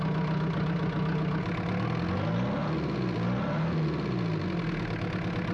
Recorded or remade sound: recorded